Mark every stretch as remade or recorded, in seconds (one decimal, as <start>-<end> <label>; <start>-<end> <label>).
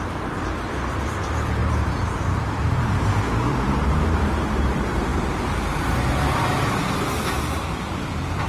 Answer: 0.0-8.5 remade